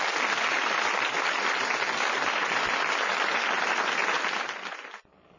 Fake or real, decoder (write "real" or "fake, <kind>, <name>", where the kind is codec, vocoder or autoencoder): real